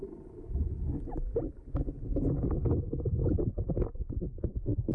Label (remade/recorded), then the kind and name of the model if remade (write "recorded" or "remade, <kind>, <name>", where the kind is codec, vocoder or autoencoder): recorded